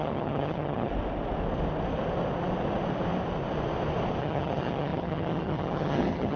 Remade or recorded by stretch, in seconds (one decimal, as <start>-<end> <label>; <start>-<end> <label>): 0.0-0.9 remade; 0.9-4.2 recorded; 4.2-6.4 remade